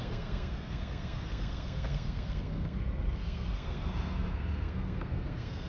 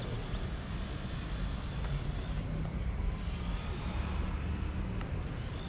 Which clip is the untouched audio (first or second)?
second